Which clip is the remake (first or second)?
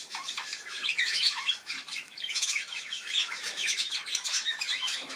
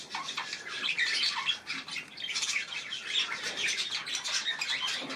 first